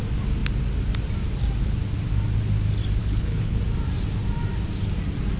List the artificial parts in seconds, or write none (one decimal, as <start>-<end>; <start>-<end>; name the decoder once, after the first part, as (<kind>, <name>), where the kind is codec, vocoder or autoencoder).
3.0-3.6 (codec, HILCodec)